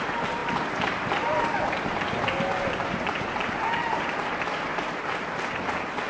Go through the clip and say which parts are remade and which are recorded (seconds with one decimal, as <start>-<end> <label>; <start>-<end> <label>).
0.0-0.4 recorded; 0.4-4.1 remade; 4.1-4.7 recorded; 4.7-6.1 remade